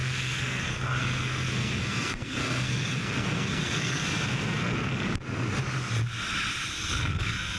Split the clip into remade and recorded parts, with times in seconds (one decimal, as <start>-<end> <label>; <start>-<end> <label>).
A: 0.0-4.9 remade; 4.9-6.9 recorded; 6.9-7.6 remade

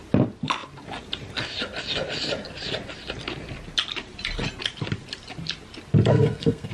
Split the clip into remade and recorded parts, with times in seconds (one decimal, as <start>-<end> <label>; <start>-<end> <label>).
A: 0.0-6.1 recorded; 6.1-6.7 remade